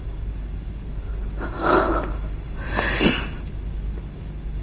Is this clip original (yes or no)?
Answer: yes